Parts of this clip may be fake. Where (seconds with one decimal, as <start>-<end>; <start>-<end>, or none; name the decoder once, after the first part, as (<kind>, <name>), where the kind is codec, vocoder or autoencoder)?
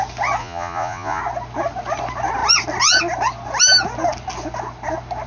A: 0.4-1.2 (vocoder, Vocos)